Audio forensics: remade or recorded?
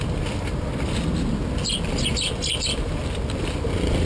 recorded